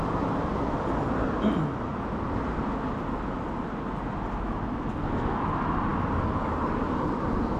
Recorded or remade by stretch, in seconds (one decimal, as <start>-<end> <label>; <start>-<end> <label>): 0.0-4.9 recorded; 4.9-5.4 remade; 5.4-7.6 recorded